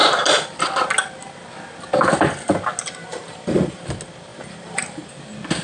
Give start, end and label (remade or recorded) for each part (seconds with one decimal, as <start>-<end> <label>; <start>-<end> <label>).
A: 0.0-3.1 recorded; 3.1-3.8 remade; 3.8-4.3 recorded; 4.3-5.1 remade; 5.1-5.6 recorded